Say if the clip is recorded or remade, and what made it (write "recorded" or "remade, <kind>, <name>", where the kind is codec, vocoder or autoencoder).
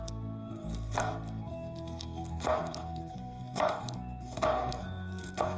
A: remade, codec, SNAC